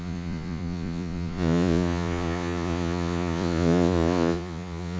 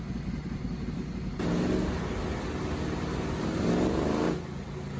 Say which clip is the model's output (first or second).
first